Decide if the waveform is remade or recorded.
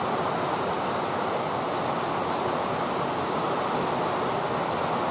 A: recorded